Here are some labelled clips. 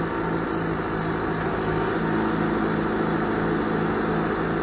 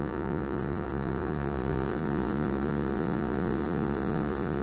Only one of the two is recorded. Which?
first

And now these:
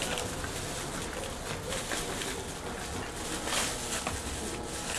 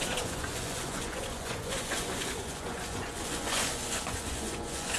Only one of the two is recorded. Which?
first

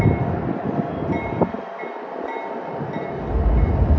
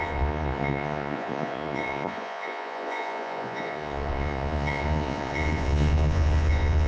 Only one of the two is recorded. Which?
first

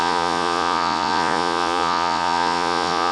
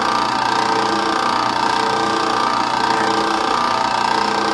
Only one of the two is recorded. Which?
second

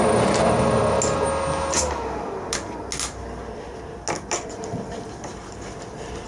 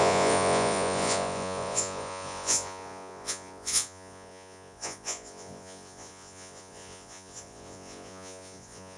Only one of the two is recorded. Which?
first